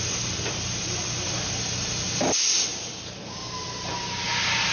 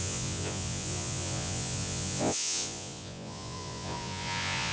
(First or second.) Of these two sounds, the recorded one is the first